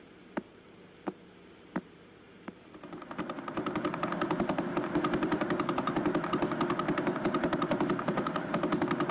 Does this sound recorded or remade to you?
remade